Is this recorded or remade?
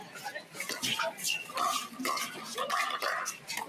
recorded